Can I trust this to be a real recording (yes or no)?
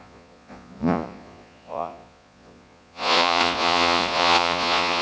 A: no